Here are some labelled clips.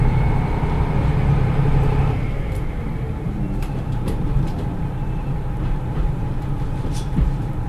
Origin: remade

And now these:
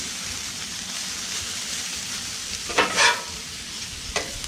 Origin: remade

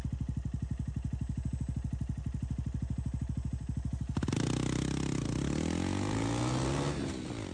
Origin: recorded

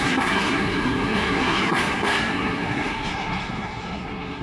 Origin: remade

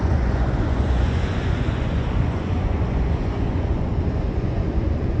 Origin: remade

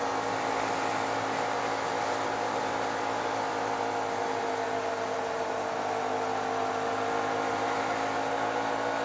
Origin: recorded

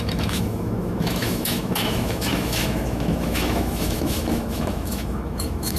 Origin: remade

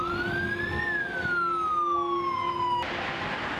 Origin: recorded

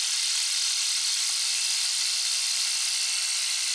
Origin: recorded